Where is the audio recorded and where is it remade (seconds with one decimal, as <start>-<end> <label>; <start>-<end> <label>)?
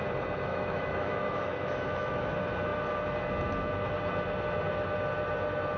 0.0-0.5 recorded; 0.5-2.3 remade; 2.3-5.8 recorded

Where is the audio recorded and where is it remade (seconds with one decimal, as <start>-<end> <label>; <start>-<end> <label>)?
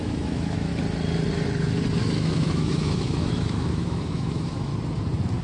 0.0-0.7 remade; 0.7-2.0 recorded; 2.0-4.7 remade; 4.7-5.4 recorded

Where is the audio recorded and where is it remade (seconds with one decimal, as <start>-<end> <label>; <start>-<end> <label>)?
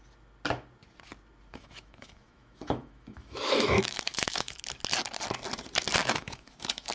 0.0-1.5 recorded; 1.5-4.6 remade; 4.6-6.0 recorded; 6.0-6.9 remade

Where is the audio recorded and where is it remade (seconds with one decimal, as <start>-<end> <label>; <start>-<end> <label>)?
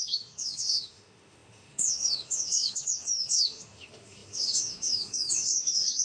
0.0-6.0 remade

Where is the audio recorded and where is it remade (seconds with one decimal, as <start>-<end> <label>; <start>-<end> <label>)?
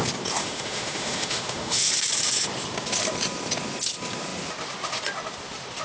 0.0-0.4 recorded; 0.4-1.9 remade; 1.9-5.8 recorded